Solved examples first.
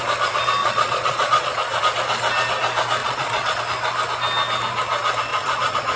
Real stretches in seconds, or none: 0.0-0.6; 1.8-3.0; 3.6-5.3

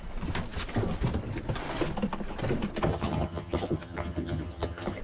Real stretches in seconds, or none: 0.0-2.9

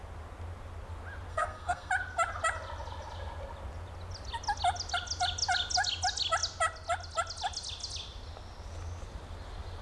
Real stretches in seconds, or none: 0.0-1.3; 1.9-9.8

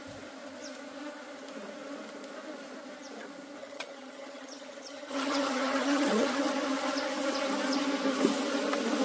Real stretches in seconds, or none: 0.0-3.6; 6.4-9.0

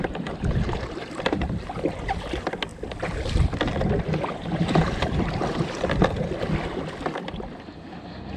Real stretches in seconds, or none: none